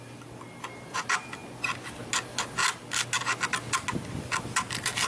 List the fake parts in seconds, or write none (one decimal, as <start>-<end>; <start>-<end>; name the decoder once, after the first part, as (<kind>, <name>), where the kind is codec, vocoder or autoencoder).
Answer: none